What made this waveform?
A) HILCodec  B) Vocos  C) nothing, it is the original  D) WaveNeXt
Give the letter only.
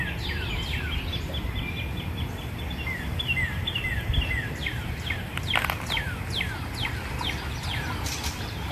C